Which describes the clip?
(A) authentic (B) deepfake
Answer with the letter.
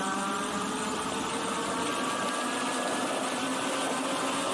A